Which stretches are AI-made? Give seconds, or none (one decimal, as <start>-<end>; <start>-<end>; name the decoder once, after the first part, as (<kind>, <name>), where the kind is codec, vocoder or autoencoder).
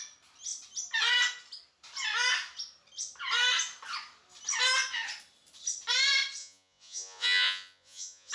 6.4-8.3 (vocoder, Vocos)